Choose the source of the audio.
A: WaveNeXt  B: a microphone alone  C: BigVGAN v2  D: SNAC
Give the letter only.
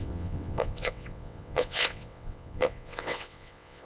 A